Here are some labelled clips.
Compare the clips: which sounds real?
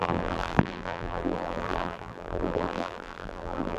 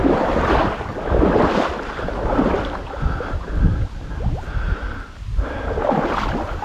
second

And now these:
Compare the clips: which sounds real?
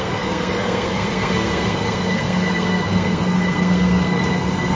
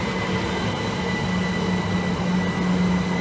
second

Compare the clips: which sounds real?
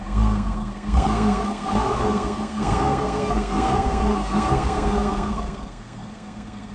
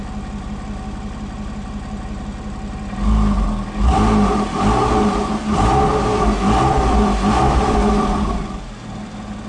second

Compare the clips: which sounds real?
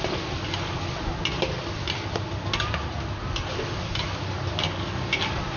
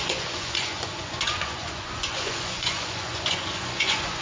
first